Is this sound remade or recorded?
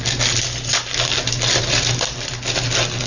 recorded